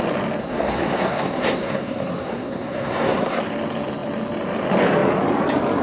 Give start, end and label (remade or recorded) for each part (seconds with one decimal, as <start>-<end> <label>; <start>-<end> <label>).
0.0-0.4 recorded; 0.4-3.4 remade; 3.4-5.8 recorded